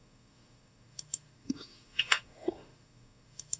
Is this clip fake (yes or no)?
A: yes